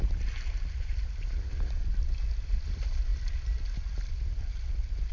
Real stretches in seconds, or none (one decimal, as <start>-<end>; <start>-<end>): 0.0-5.1